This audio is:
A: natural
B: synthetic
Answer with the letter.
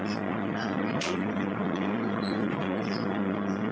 B